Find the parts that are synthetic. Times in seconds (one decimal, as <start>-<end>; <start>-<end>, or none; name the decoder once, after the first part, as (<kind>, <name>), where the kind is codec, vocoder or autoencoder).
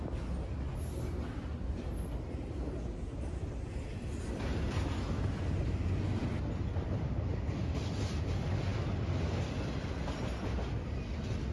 none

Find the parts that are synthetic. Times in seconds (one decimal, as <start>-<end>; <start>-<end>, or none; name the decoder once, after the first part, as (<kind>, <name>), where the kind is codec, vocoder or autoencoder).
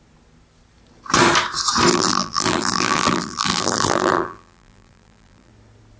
1.9-5.5 (vocoder, BigVGAN v2)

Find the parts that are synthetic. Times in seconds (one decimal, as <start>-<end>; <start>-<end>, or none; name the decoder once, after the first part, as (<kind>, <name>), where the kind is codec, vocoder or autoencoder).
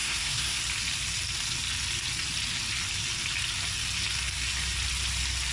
0.0-0.6 (codec, SNAC)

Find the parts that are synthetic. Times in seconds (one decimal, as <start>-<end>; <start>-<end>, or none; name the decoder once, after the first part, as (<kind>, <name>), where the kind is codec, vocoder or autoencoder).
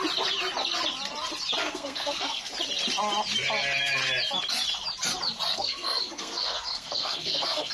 1.6-2.5 (codec, SNAC); 5.5-7.7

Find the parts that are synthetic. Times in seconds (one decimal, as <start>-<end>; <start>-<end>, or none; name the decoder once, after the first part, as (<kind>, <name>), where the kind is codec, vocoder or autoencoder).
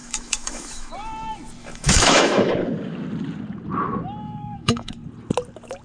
0.0-0.9 (autoencoder, DAC-VAE); 1.6-2.5; 4.2-4.9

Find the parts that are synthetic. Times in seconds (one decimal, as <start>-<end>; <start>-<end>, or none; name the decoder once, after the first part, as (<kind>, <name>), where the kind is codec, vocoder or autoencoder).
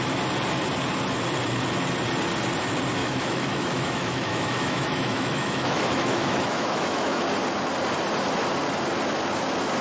3.0-7.2 (autoencoder, DAC-VAE)